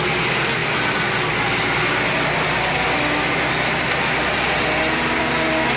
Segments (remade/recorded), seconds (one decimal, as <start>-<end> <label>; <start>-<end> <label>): 0.0-5.8 recorded